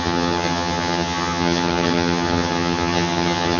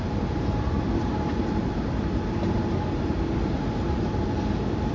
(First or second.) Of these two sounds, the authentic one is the second